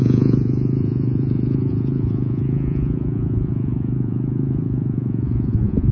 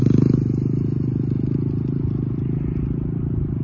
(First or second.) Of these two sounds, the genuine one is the second